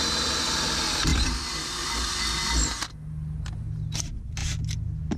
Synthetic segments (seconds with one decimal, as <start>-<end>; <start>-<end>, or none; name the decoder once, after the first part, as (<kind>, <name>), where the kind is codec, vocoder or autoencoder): none